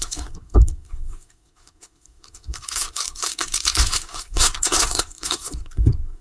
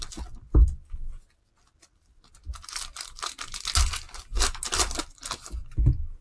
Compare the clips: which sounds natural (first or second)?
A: second